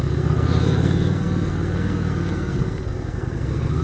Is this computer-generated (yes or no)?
yes